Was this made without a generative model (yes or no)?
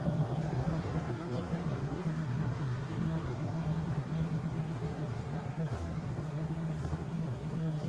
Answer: no